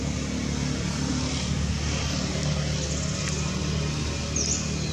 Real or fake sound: real